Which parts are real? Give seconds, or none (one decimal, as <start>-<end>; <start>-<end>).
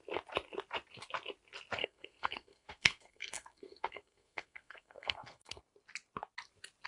0.0-1.8; 5.6-6.9